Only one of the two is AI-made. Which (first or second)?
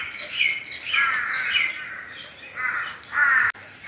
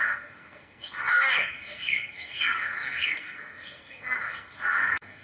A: second